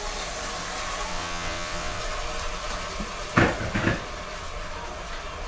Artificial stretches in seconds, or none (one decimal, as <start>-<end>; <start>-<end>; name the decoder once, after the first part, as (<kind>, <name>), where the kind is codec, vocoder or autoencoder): 1.1-2.0 (vocoder, WaveNeXt)